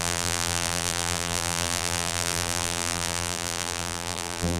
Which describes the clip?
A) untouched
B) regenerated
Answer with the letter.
B